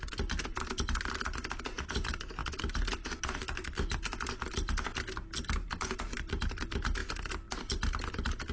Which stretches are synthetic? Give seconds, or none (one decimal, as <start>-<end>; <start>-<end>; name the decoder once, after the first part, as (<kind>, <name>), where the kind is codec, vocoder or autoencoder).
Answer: none